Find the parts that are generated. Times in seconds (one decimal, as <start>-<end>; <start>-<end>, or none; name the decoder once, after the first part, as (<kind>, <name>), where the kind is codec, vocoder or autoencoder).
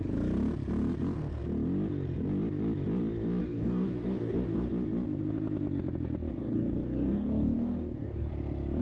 3.4-4.7 (codec, DAC); 6.3-8.3